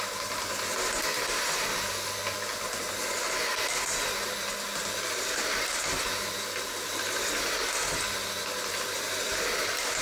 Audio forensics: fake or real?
real